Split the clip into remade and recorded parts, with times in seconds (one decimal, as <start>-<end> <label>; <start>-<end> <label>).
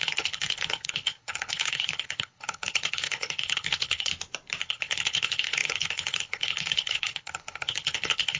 0.0-4.1 remade; 4.1-4.6 recorded; 4.6-8.4 remade